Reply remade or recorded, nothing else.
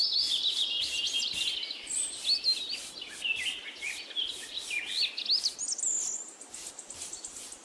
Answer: recorded